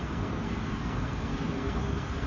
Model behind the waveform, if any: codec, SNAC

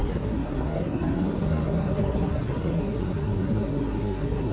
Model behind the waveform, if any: codec, SNAC